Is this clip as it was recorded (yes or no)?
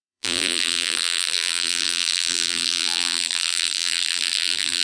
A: no